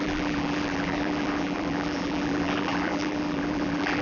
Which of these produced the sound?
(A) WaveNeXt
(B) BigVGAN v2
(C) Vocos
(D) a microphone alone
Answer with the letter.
B